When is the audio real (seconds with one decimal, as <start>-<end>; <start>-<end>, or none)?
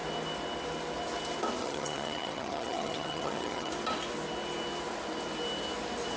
0.0-1.6; 3.7-6.2